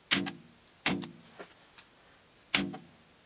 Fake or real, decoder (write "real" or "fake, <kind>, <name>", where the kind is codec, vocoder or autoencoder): real